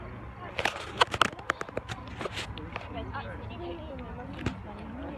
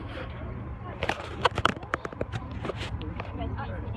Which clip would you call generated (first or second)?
second